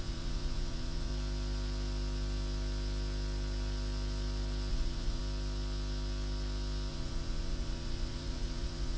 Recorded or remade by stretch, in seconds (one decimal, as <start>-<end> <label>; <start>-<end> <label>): 0.0-1.1 remade; 1.1-4.7 recorded; 4.7-5.2 remade; 5.2-6.9 recorded; 6.9-9.0 remade